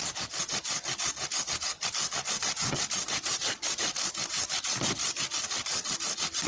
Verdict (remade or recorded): recorded